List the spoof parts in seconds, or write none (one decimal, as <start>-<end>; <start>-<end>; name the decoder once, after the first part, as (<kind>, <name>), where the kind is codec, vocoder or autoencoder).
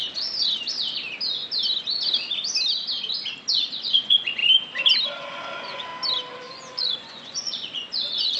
3.5-4.4 (vocoder, Vocos); 5.2-5.9; 6.5-8.4